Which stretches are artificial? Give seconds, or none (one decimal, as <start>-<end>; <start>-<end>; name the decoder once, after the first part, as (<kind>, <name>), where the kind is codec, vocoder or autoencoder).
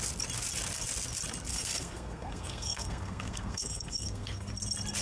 1.5-4.5 (codec, SNAC)